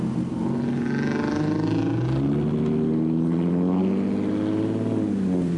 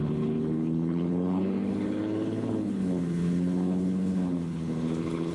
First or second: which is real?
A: first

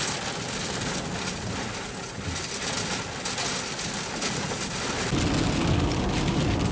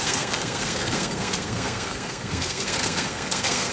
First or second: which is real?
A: first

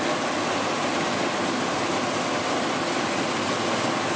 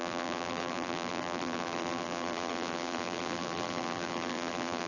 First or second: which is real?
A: first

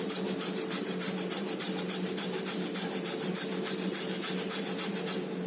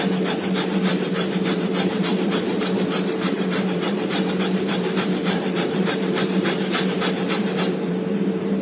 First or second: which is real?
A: first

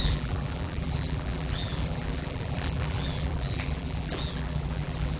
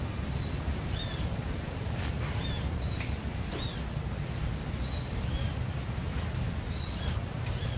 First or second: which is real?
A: second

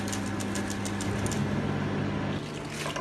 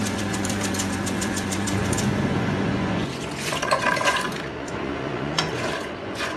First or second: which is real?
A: first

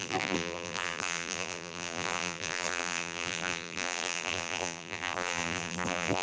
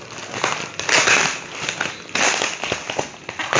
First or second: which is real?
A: second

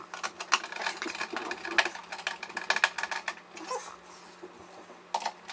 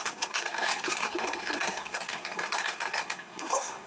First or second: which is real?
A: first